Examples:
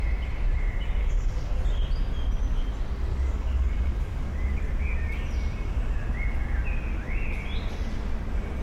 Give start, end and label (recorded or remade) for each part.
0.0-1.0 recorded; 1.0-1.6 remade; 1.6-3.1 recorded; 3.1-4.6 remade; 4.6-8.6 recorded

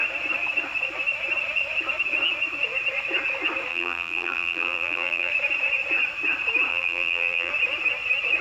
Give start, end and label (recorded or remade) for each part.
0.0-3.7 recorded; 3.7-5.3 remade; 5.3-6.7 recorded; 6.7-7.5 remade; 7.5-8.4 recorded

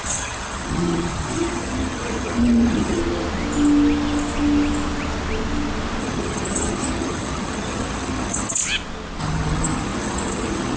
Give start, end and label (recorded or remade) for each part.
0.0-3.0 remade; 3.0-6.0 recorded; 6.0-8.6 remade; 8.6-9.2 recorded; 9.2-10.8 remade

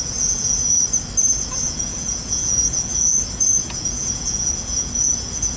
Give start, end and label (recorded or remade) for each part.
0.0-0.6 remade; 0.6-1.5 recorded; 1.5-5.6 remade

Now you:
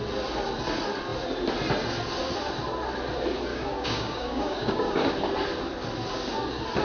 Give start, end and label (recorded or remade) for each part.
0.0-3.5 recorded; 3.5-5.1 remade; 5.1-6.8 recorded